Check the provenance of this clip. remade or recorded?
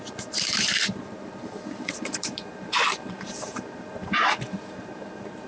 remade